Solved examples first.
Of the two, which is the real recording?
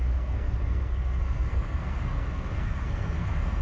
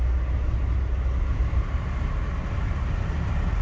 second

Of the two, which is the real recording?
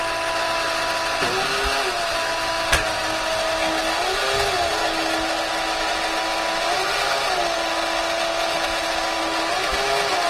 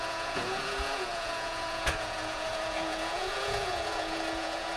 first